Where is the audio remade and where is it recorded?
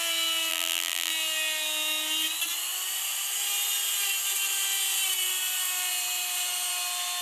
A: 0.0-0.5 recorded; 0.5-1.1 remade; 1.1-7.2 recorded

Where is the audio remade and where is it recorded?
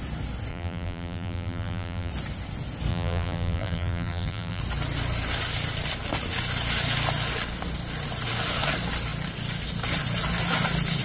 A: 0.0-0.5 recorded; 0.5-2.1 remade; 2.1-2.9 recorded; 2.9-4.6 remade; 4.6-11.0 recorded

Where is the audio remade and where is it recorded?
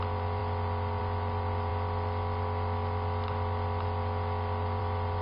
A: 0.0-5.2 recorded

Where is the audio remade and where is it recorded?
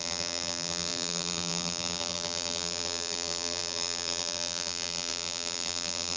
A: 0.0-6.2 remade